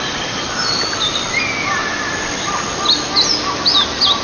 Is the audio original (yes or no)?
yes